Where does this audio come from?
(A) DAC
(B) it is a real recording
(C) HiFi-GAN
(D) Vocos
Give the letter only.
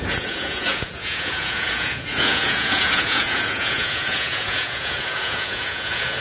D